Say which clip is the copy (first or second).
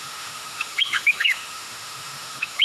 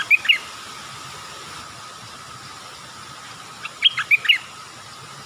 first